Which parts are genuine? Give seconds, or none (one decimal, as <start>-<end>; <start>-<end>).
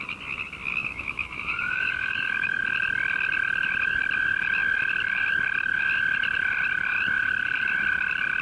0.0-0.8; 2.6-8.4